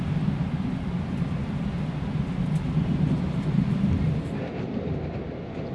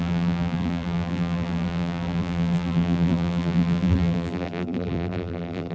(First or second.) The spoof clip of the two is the second